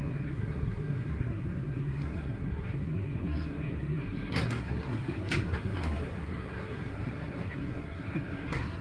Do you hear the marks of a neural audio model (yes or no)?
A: yes